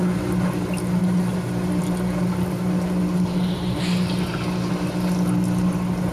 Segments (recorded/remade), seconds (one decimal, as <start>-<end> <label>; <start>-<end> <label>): 0.0-1.0 recorded; 1.0-4.7 remade; 4.7-6.1 recorded